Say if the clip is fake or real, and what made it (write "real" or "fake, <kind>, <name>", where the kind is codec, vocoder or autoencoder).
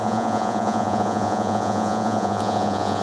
fake, vocoder, Vocos